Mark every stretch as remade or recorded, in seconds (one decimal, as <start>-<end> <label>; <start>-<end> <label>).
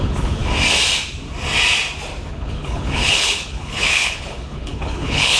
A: 0.0-0.4 remade; 0.4-2.3 recorded; 2.3-5.4 remade